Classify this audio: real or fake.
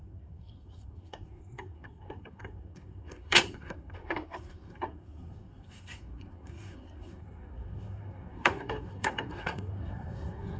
fake